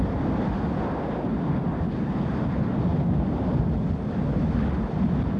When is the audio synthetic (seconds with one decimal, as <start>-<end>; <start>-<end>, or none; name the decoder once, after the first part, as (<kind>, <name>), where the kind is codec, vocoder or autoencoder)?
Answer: none